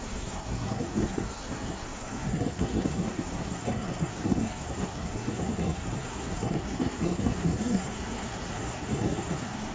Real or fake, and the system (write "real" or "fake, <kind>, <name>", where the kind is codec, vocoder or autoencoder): fake, codec, SNAC